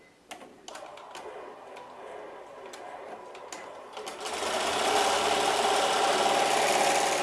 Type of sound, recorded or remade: recorded